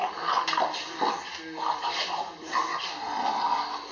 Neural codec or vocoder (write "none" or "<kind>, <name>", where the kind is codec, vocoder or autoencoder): none